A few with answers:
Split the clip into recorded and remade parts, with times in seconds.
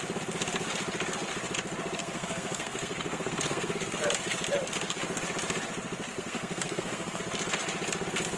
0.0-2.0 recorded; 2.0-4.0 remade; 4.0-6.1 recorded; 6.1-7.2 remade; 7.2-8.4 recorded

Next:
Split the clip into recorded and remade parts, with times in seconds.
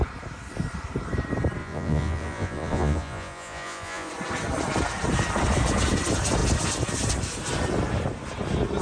0.0-1.6 recorded; 1.6-4.1 remade; 4.1-8.8 recorded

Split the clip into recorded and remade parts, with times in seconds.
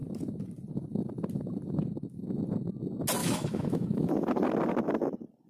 0.0-3.2 recorded; 3.2-4.3 remade; 4.3-5.5 recorded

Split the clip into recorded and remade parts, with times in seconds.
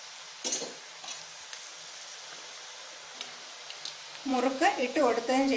0.0-4.3 recorded; 4.3-5.6 remade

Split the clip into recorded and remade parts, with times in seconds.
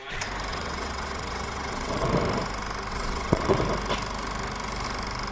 0.0-0.5 recorded; 0.5-2.1 remade; 2.1-2.9 recorded; 2.9-3.6 remade; 3.6-5.3 recorded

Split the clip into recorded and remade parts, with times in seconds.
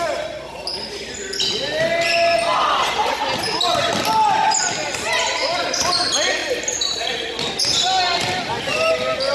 0.0-9.3 recorded